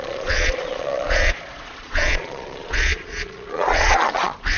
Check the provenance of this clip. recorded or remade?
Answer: remade